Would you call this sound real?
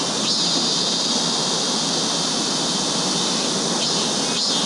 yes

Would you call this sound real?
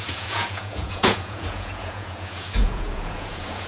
no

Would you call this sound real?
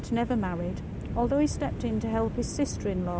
yes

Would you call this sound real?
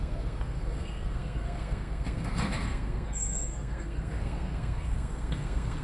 no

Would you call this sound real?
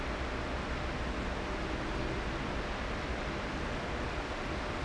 yes